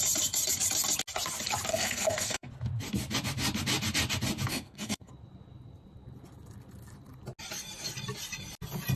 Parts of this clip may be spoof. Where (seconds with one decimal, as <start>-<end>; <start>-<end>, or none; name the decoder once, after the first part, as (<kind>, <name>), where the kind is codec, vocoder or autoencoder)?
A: 1.7-2.5 (codec, SNAC); 4.5-5.1